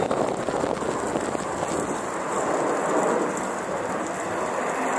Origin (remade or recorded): recorded